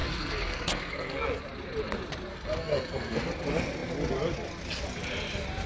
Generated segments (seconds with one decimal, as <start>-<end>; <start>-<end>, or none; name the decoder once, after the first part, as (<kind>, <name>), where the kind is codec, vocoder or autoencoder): 0.0-1.4 (codec, SNAC); 2.3-3.3